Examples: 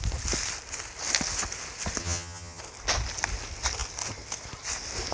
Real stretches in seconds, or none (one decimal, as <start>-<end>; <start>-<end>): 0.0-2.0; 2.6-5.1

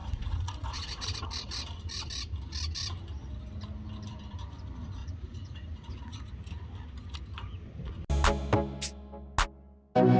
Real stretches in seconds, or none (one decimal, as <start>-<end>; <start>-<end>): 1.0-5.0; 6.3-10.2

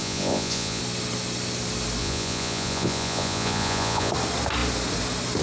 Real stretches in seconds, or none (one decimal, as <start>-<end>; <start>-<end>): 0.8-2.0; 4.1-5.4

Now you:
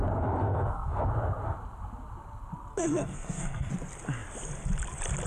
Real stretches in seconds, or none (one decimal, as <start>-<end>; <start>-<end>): 0.0-0.4; 1.0-2.7; 3.7-5.3

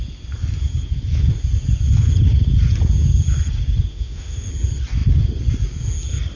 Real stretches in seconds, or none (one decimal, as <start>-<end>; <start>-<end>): 0.0-3.9; 4.5-6.4

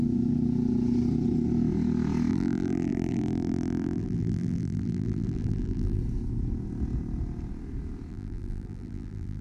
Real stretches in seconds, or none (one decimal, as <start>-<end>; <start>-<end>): 0.0-2.3; 6.0-8.1